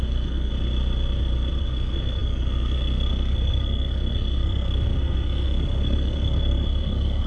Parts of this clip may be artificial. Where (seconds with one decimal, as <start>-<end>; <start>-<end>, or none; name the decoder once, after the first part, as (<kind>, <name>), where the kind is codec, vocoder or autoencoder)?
0.0-0.5 (codec, SNAC); 1.6-7.3